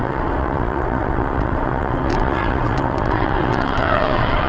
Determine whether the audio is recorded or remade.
remade